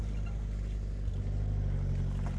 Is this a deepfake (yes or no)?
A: no